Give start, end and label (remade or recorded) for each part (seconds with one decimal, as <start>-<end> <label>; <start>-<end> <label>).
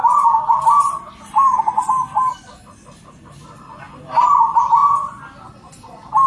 0.0-6.3 recorded